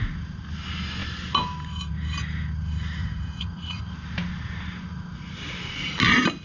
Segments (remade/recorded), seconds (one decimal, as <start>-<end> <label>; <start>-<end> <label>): 0.0-3.0 recorded; 3.0-3.8 remade; 3.8-6.4 recorded